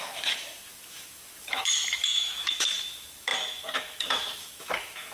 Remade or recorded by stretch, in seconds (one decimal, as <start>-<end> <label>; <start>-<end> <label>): 0.0-5.1 remade